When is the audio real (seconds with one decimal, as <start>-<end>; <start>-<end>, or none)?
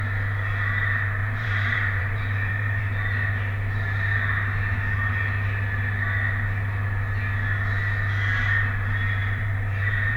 0.0-1.2; 2.8-9.2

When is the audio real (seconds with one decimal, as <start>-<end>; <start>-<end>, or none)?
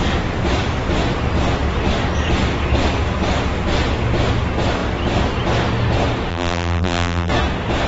0.0-6.3; 7.3-7.9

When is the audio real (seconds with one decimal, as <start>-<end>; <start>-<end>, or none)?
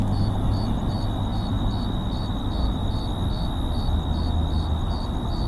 0.0-5.5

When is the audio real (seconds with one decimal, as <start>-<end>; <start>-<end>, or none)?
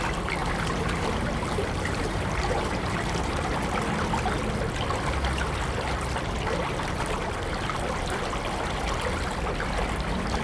0.0-0.4; 3.5-10.4